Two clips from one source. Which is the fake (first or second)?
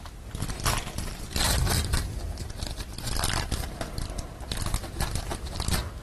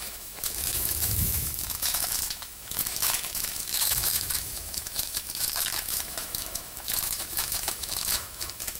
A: second